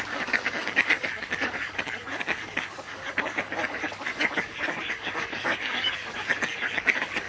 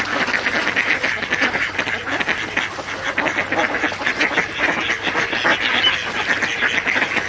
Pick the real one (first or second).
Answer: second